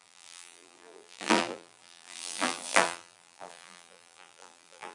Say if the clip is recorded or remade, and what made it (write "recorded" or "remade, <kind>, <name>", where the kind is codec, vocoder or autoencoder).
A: remade, vocoder, BigVGAN v2